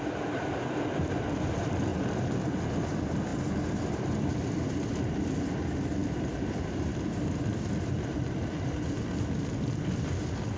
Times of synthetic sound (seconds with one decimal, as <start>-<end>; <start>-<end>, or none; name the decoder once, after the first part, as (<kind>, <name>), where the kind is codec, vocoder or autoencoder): none